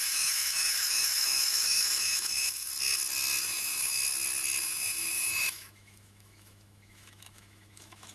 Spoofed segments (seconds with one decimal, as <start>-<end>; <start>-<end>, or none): 0.0-2.7; 3.4-4.0; 4.6-8.1